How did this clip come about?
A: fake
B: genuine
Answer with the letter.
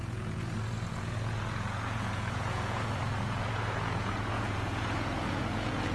A